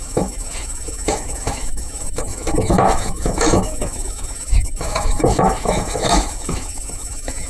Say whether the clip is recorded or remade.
remade